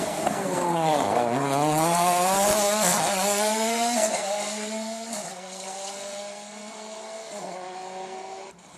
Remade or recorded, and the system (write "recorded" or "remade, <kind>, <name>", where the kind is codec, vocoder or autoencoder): remade, codec, SNAC